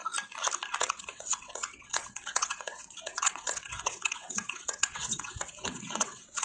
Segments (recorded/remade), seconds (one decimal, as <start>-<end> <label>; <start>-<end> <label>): 0.0-0.8 recorded; 0.8-6.4 remade